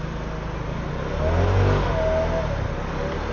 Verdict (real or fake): real